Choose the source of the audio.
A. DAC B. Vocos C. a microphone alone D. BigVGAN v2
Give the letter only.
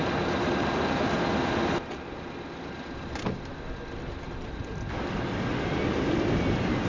C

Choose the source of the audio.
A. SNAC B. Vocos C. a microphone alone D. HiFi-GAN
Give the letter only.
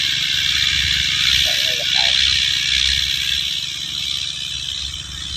C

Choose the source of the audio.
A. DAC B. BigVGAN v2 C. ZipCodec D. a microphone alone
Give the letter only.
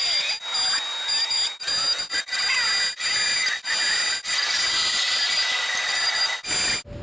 D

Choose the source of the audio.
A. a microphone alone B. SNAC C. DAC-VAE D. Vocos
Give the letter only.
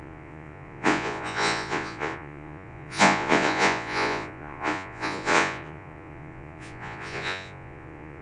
D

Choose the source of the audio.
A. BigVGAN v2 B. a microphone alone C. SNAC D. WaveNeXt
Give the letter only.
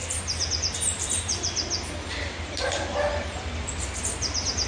B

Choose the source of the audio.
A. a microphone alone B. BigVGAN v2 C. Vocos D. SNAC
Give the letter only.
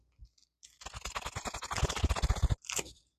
A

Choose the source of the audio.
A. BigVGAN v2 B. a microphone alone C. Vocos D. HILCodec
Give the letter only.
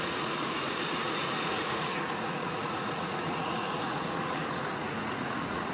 C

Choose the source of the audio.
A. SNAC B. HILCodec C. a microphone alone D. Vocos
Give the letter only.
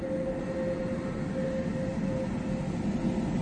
C